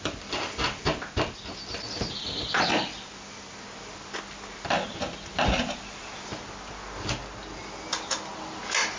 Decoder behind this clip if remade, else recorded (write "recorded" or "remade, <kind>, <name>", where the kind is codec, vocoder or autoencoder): recorded